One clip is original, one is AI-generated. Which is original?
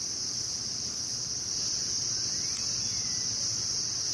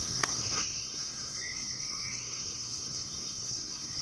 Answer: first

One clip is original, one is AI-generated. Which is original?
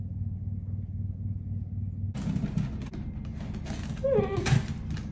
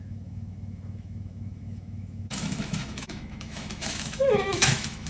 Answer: first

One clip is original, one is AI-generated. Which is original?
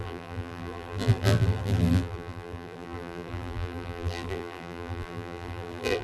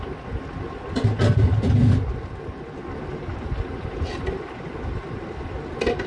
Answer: second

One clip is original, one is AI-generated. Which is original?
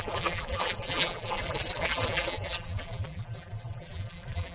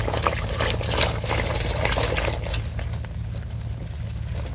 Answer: second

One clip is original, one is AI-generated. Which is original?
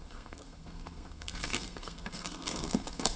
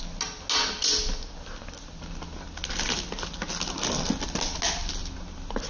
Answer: second